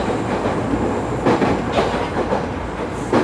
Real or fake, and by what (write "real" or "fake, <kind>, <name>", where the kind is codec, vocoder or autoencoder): real